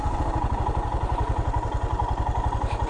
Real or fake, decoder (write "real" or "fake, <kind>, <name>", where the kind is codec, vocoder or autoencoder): real